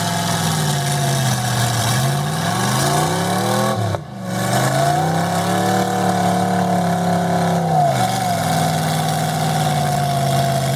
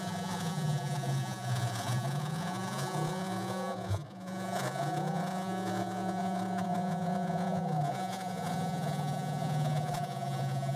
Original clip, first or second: first